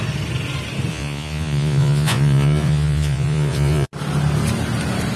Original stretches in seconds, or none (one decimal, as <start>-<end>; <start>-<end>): 0.0-0.9; 3.9-5.2